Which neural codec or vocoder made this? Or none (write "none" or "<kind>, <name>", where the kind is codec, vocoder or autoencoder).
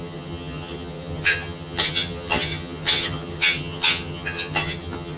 vocoder, HiFi-GAN